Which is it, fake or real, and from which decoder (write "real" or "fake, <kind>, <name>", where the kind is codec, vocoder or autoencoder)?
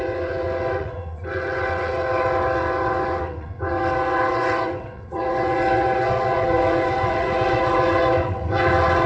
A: fake, vocoder, WaveNeXt